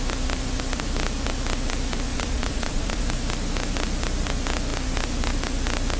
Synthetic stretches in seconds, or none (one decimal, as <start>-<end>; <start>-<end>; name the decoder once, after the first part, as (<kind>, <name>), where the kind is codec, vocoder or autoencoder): 2.1-3.0 (vocoder, Vocos)